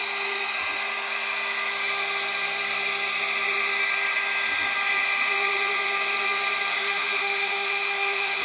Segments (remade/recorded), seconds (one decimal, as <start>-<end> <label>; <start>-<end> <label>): 0.0-6.7 recorded; 6.7-8.4 remade